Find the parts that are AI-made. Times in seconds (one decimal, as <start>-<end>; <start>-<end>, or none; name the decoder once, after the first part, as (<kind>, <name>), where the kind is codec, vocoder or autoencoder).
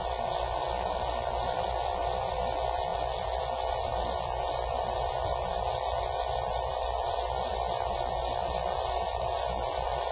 none